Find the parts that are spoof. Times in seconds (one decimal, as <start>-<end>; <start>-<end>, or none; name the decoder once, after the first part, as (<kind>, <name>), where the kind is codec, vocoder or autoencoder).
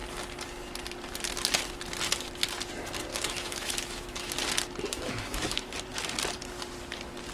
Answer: 3.1-4.3 (autoencoder, DAC-VAE); 4.9-5.7